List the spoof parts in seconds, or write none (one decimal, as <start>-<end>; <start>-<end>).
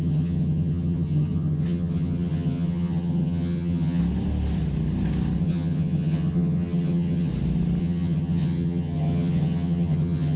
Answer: 0.0-4.0; 5.4-7.3; 7.8-10.4